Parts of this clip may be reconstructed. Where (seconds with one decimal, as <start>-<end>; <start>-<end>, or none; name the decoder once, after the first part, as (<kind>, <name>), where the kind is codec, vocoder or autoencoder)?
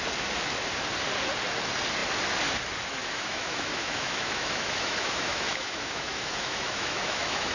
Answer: 3.0-7.5 (autoencoder, DAC-VAE)